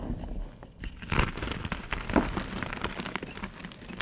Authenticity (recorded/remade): recorded